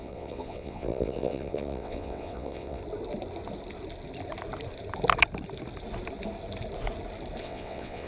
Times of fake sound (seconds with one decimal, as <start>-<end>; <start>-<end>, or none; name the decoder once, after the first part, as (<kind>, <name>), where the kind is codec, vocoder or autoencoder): 0.0-2.8 (vocoder, WaveNeXt); 7.4-8.1